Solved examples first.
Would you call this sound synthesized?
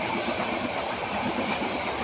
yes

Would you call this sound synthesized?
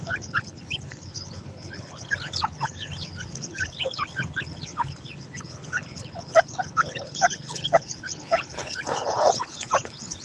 yes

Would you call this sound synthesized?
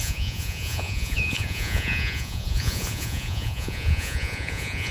yes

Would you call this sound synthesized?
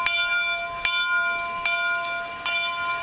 no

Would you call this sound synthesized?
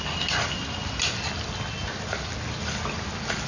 no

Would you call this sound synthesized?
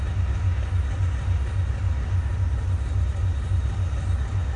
no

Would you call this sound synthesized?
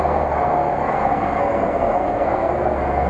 yes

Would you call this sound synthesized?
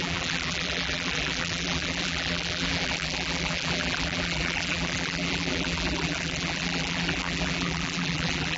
yes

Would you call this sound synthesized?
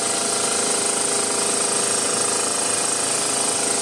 no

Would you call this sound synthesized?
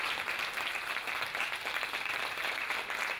yes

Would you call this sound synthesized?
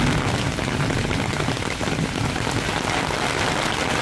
no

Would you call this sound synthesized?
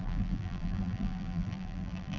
yes